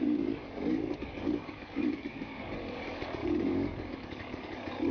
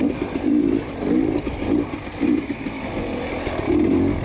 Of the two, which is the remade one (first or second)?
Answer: first